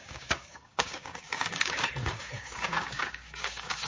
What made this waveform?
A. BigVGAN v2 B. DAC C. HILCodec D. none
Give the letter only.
B